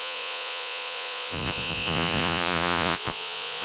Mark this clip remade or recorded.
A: remade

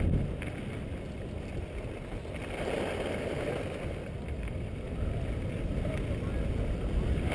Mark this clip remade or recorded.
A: recorded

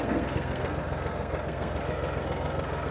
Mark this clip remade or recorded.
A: remade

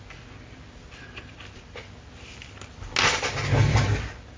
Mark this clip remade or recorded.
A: recorded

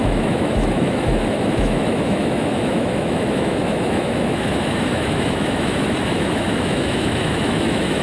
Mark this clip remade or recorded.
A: remade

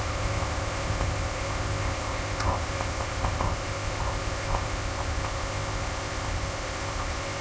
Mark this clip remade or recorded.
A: remade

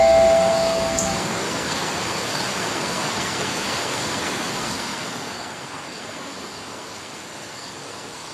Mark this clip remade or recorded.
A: remade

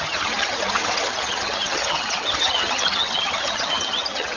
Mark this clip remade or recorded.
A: remade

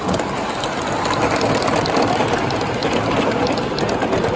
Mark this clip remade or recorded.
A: recorded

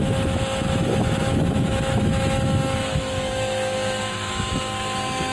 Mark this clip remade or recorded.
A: remade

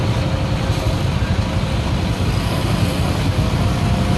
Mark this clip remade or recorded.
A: recorded